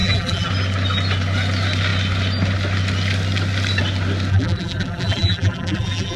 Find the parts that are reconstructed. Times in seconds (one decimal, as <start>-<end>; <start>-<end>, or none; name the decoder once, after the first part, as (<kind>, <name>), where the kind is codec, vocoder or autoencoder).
0.0-0.5 (vocoder, BigVGAN v2); 4.3-6.2